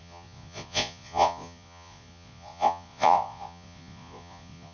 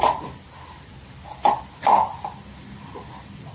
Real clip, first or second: second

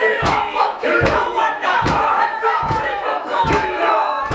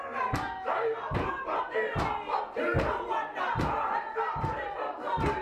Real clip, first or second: second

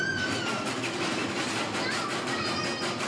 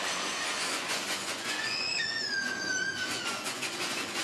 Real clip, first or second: first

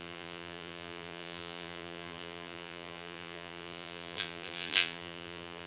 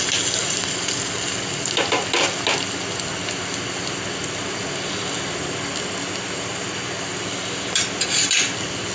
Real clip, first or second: second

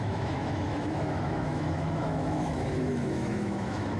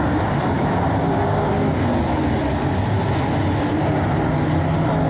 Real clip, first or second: second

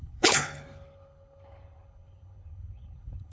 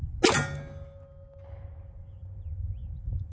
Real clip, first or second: second